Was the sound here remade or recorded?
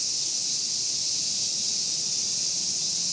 recorded